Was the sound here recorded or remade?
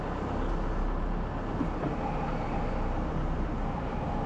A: recorded